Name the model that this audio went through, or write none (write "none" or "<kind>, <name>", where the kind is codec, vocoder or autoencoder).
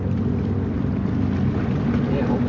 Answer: none